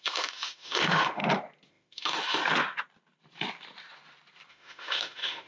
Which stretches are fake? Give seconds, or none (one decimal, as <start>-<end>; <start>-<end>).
0.0-1.2; 1.7-2.4; 4.5-5.5